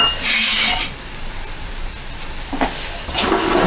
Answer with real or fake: real